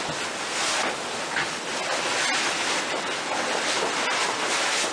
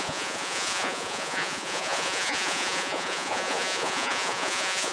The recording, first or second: first